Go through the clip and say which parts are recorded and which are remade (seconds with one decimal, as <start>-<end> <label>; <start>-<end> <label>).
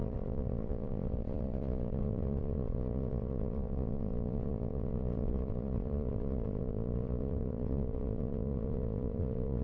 0.0-9.6 remade